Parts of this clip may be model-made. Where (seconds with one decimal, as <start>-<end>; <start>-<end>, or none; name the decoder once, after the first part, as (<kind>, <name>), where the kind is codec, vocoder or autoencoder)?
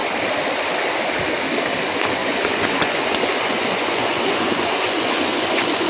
2.2-5.9 (vocoder, Vocos)